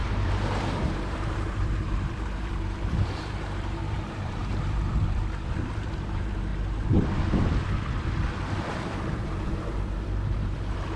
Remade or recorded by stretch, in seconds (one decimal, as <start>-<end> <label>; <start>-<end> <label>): 0.0-6.5 remade; 6.5-8.8 recorded; 8.8-11.0 remade